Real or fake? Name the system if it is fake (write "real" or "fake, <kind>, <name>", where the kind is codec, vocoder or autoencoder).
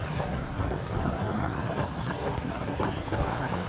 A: fake, codec, SNAC